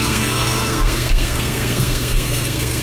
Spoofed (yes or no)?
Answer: yes